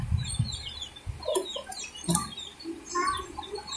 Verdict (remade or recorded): recorded